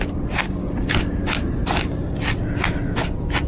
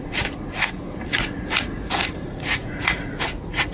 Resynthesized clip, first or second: second